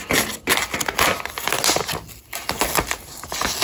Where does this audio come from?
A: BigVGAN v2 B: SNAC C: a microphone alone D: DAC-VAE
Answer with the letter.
C